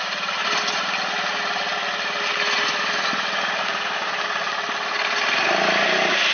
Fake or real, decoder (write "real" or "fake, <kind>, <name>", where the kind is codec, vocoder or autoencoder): real